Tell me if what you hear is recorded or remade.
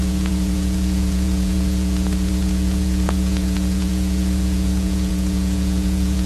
remade